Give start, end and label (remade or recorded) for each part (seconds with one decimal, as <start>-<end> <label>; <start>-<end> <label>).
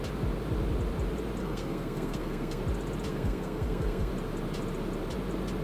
0.0-1.4 recorded; 1.4-2.6 remade; 2.6-3.1 recorded; 3.1-4.1 remade; 4.1-5.6 recorded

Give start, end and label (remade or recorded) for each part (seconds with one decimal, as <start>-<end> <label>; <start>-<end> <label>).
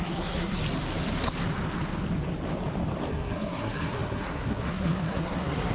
0.0-0.6 remade; 0.6-3.1 recorded; 3.1-5.7 remade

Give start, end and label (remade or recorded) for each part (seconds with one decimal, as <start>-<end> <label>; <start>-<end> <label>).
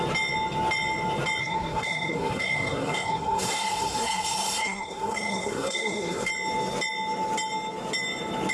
0.0-1.4 recorded; 1.4-6.3 remade; 6.3-8.5 recorded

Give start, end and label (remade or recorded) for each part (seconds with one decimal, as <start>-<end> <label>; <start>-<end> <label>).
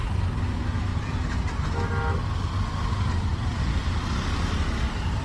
0.0-5.2 recorded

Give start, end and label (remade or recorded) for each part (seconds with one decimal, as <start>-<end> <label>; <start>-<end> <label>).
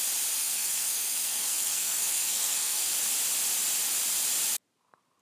0.0-0.4 recorded; 0.4-2.9 remade; 2.9-5.2 recorded